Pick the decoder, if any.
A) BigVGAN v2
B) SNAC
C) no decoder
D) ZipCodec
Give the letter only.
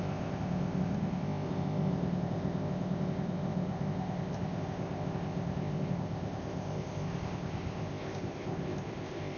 D